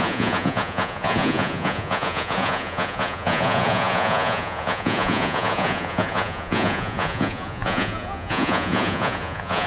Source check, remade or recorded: remade